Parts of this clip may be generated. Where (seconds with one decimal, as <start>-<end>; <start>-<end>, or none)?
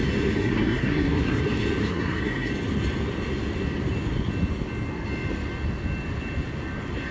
0.4-1.4; 1.8-2.5